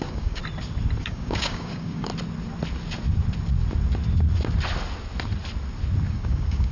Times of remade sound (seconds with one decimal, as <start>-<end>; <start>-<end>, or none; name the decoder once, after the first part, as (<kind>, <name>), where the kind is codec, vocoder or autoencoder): 0.0-0.4 (codec, DAC); 1.0-2.1; 6.1-6.7